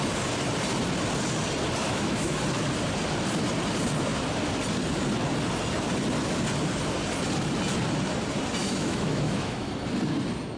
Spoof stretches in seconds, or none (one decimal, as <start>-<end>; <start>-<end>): 1.8-2.4; 8.6-9.7

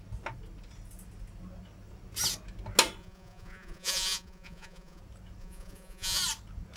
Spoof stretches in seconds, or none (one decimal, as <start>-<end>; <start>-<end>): 3.0-5.0; 5.4-6.2

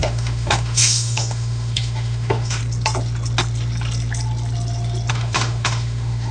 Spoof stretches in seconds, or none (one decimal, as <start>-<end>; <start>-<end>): 0.0-2.6; 5.1-6.3

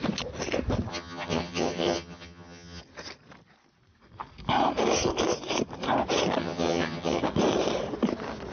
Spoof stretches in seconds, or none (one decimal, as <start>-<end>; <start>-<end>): 0.9-2.8; 6.4-7.2

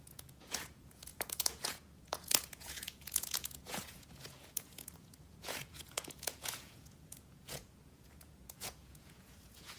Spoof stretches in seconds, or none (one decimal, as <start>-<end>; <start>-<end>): 0.0-9.8